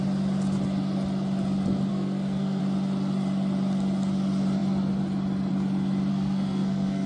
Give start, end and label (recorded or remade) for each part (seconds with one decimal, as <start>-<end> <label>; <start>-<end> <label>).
0.0-1.9 recorded; 1.9-2.6 remade; 2.6-6.1 recorded; 6.1-7.1 remade